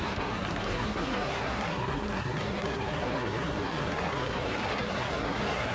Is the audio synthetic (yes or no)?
yes